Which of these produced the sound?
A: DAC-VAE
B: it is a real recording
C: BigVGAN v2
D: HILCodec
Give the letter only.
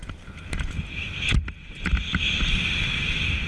B